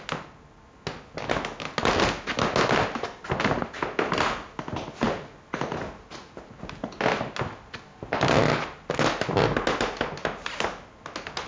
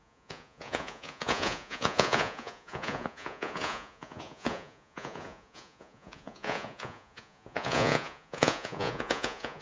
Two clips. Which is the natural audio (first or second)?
first